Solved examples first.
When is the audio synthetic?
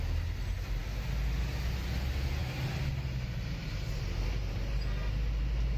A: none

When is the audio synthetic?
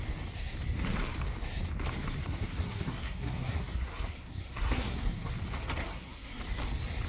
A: 2.2-5.3 (codec, SNAC); 5.8-6.4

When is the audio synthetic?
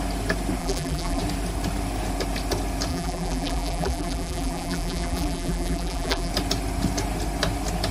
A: 0.6-1.2 (vocoder, BigVGAN v2); 2.9-6.3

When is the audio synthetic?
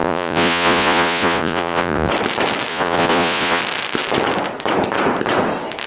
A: 0.0-2.1 (vocoder, Vocos); 2.7-3.6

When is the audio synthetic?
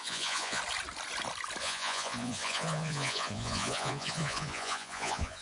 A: 0.0-0.6 (vocoder, Vocos); 1.6-5.4